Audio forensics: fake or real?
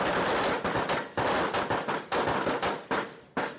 real